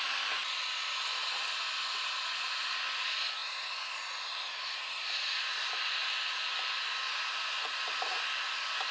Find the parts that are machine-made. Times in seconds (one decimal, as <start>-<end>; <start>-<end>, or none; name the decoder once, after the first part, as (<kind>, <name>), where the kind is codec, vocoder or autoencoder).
none